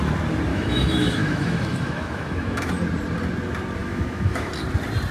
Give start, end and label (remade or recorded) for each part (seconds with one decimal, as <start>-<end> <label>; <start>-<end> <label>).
0.0-0.5 recorded; 0.5-2.7 remade; 2.7-3.8 recorded; 3.8-4.5 remade; 4.5-5.1 recorded